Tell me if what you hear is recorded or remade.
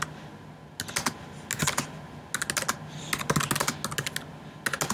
recorded